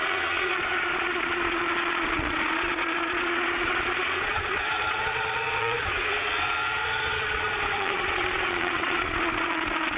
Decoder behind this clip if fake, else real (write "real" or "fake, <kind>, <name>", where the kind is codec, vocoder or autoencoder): fake, vocoder, Vocos